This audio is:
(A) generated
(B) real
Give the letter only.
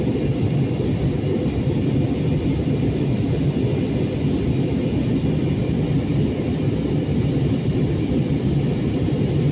B